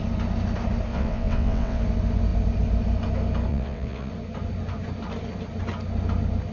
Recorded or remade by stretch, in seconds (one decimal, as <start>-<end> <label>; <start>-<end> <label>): 0.0-0.9 recorded; 0.9-1.8 remade; 1.8-3.5 recorded; 3.5-4.1 remade; 4.1-6.5 recorded